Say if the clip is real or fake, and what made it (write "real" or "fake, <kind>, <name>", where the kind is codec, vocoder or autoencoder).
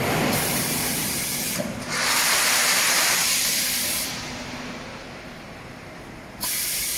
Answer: fake, vocoder, BigVGAN v2